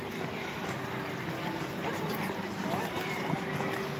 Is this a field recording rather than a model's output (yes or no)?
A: yes